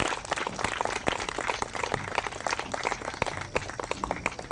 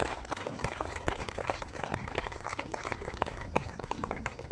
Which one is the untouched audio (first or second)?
first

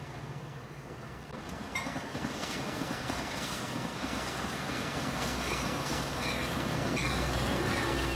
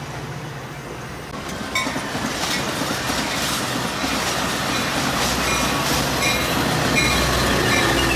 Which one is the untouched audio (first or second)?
second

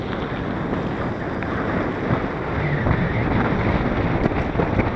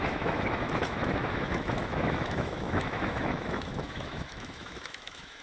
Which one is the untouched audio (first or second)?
first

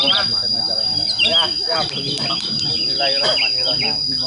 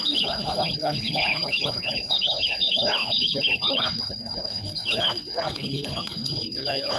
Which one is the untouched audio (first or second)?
first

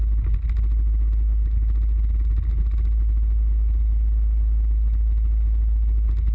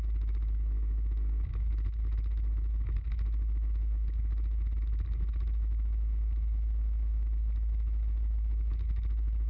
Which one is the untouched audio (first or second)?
first